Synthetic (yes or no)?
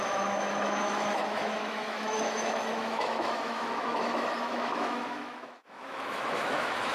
yes